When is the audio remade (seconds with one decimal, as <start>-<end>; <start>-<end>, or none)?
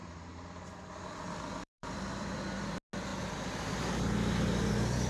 0.0-2.3; 3.1-3.9